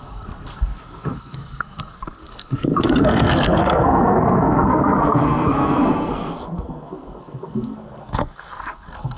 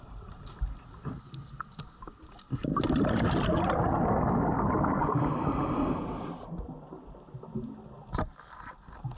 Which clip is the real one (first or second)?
second